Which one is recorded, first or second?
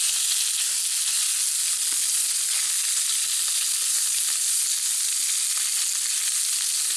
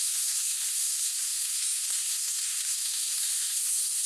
first